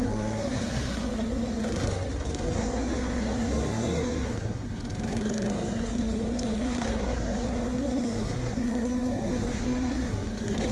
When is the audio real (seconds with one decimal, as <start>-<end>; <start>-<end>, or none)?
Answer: none